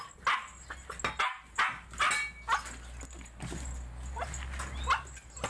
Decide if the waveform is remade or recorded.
recorded